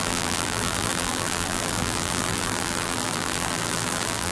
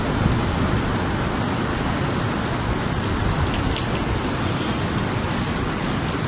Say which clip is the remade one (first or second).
first